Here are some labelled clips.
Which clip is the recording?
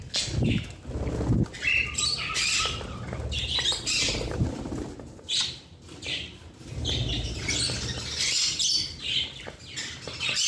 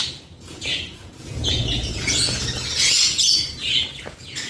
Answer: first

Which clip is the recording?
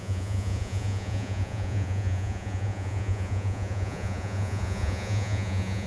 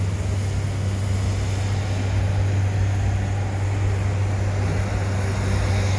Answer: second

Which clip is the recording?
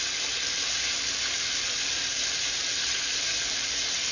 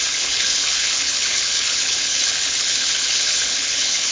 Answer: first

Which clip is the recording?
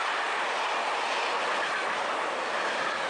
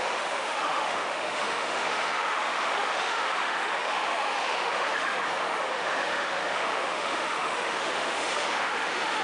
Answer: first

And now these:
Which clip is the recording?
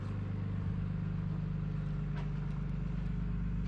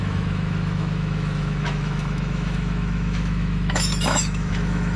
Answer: first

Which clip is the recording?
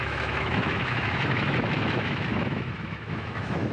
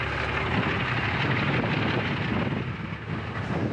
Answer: second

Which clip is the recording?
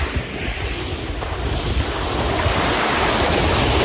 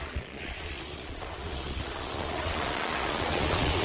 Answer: first